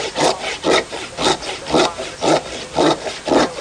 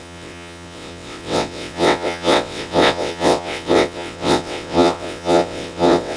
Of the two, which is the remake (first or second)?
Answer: second